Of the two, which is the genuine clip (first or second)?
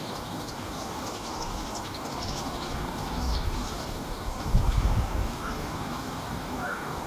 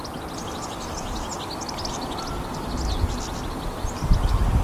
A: second